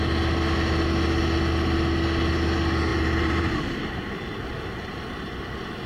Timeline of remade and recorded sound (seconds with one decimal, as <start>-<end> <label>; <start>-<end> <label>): 0.0-2.9 recorded; 2.9-5.0 remade; 5.0-5.9 recorded